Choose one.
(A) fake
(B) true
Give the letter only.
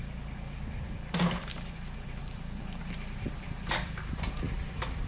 A